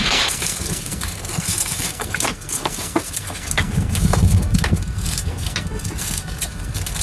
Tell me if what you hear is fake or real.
fake